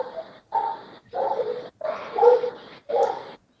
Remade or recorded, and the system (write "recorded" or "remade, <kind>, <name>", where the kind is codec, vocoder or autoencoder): recorded